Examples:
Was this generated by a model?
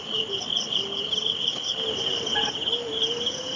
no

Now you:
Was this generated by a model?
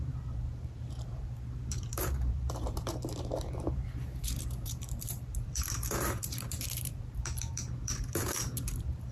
yes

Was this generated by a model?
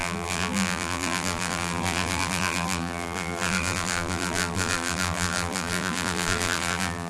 yes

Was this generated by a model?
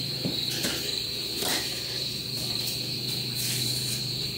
yes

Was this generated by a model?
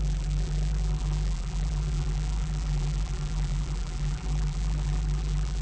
yes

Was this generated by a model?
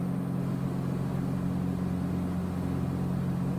no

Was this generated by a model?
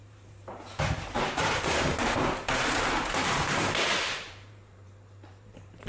yes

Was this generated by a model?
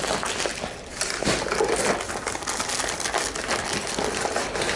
no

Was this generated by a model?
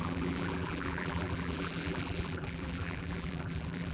yes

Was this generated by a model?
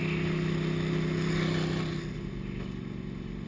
no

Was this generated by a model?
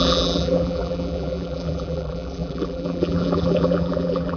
yes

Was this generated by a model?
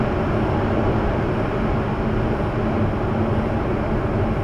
no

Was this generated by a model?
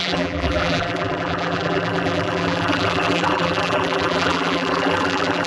yes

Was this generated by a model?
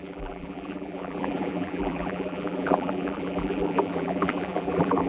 yes